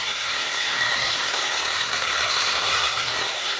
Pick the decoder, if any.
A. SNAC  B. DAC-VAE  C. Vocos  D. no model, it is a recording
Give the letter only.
A